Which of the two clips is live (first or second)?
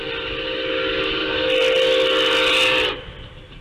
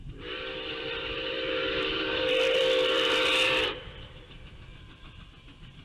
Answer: first